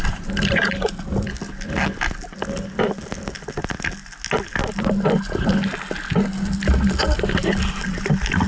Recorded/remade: recorded